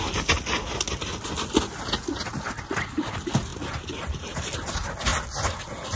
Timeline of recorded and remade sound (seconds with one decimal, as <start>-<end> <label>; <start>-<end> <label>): 0.0-6.0 recorded